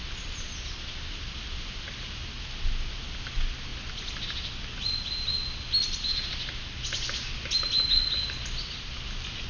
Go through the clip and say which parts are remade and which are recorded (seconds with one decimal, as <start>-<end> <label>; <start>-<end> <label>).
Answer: 0.0-9.5 recorded